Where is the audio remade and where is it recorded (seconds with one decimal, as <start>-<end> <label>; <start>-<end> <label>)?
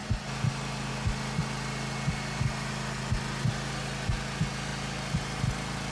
0.0-5.9 recorded